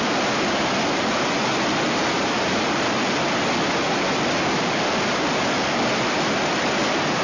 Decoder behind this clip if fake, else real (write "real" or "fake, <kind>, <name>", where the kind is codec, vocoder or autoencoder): real